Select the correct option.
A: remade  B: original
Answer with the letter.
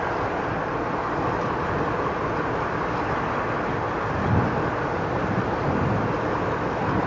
B